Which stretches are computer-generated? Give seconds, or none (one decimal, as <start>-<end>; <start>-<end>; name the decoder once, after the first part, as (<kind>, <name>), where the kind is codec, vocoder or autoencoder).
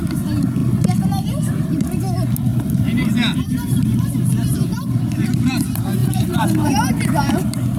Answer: 2.5-4.8 (vocoder, BigVGAN v2); 6.0-6.7